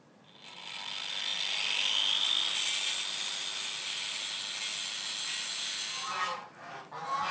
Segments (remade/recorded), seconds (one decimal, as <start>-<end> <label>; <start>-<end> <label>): 0.0-7.3 recorded